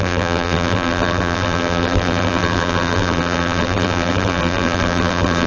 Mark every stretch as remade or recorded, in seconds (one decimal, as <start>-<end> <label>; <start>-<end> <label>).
0.0-5.5 remade